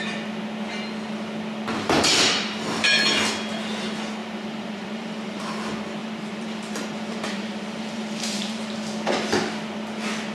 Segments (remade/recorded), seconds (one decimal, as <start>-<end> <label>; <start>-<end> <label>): 0.0-1.7 recorded; 1.7-3.0 remade; 3.0-4.2 recorded; 4.2-5.4 remade; 5.4-6.0 recorded; 6.0-8.9 remade; 8.9-10.3 recorded